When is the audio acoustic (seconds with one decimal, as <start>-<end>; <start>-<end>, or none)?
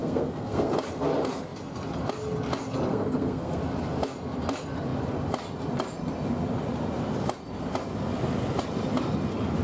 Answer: 0.7-2.9; 3.6-9.6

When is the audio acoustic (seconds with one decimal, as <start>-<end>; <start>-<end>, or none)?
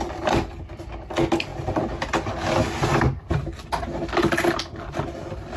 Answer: 0.0-5.6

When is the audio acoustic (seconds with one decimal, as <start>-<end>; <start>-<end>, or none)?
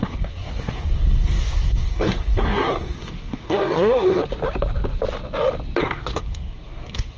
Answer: 4.2-5.8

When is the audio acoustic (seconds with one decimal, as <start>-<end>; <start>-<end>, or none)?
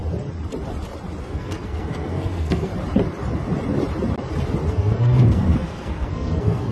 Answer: 0.0-1.2; 2.7-4.7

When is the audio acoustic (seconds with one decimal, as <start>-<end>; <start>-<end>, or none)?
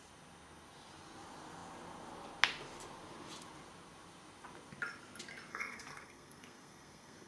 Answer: 0.0-5.5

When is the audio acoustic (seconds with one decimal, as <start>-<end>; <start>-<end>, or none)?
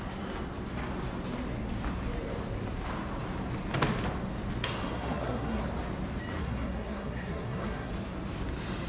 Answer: 0.0-4.8; 5.6-6.4; 7.9-8.9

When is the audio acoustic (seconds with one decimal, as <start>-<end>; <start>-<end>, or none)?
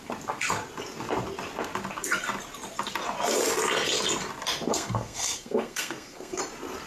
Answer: 0.0-4.7; 6.4-6.9